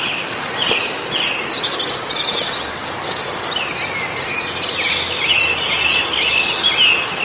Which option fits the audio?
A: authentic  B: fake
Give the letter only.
A